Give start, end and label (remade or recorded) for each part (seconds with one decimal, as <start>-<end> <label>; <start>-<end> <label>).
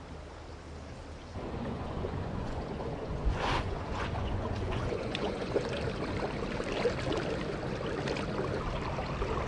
0.0-1.3 recorded; 1.3-5.6 remade; 5.6-9.5 recorded